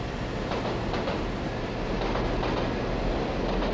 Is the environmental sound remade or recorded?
recorded